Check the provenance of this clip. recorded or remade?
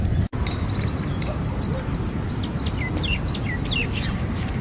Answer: recorded